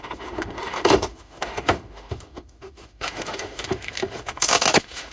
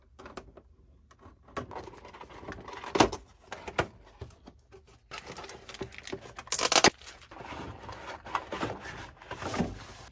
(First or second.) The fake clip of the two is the first